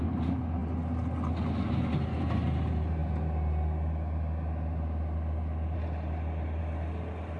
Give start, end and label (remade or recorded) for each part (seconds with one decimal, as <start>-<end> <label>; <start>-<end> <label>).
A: 0.0-7.4 recorded